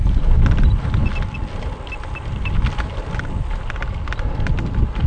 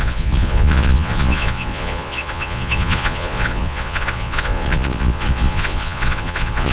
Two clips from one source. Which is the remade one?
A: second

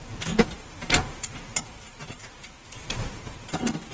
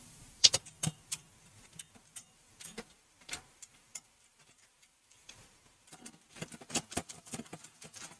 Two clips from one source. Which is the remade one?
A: second